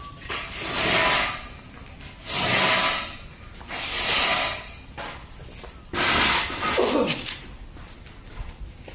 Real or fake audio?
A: real